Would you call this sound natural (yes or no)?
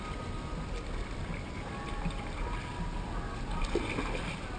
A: yes